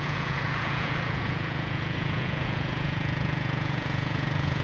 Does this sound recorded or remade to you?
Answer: remade